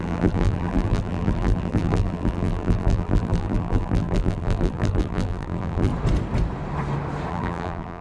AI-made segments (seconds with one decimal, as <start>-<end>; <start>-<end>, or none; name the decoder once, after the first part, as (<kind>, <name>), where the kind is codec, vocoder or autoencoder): 0.0-5.9 (vocoder, BigVGAN v2); 7.3-8.0